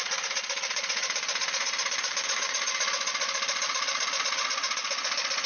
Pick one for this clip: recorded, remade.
remade